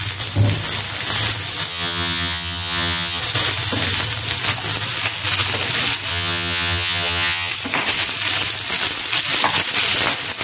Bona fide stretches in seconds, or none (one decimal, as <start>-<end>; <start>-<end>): 0.0-1.7; 3.2-6.1; 7.5-10.4